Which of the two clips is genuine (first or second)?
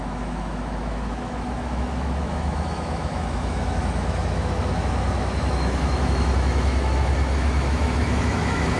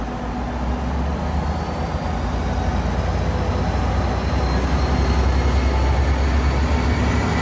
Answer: second